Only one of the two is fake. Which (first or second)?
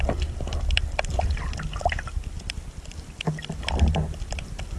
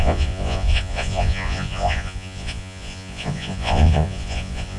second